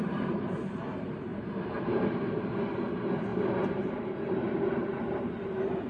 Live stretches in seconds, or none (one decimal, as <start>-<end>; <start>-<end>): none